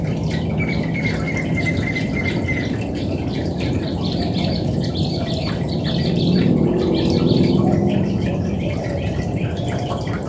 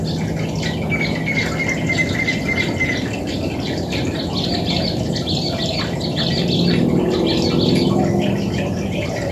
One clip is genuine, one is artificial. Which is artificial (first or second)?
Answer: first